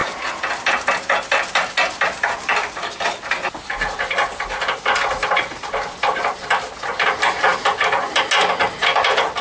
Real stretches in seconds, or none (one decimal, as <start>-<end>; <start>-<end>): 0.0-9.4